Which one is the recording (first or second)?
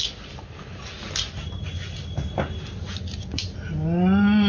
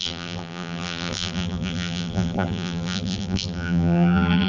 first